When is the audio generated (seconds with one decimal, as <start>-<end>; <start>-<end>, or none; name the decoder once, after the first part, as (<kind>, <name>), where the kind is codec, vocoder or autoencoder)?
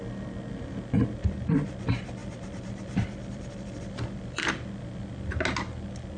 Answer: 2.2-4.4 (vocoder, BigVGAN v2)